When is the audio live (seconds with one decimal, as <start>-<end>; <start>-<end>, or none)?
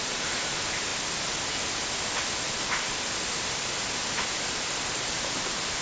0.9-4.3